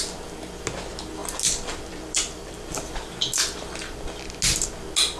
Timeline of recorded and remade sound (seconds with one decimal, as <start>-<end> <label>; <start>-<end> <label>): 0.0-1.2 recorded; 1.2-4.3 remade; 4.3-5.2 recorded